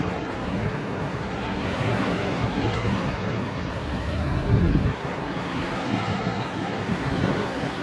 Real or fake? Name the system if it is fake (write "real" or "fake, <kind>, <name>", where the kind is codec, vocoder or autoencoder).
fake, codec, SNAC